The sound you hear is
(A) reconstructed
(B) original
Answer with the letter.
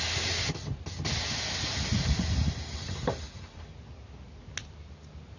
B